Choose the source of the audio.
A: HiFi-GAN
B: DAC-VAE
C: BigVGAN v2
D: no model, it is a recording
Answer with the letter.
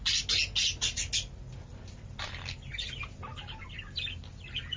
D